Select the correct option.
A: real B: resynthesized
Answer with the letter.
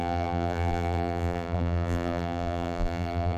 B